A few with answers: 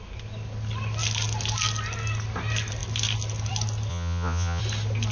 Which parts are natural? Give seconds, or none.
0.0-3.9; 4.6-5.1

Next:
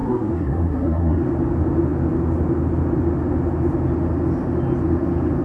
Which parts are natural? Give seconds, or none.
1.2-5.4

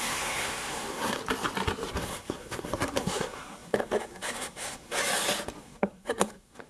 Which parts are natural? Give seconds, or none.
1.2-1.9; 5.0-5.6

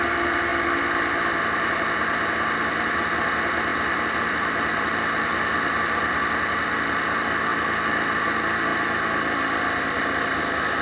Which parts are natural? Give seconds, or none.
0.0-3.7; 6.5-7.5; 8.2-8.7; 9.6-10.8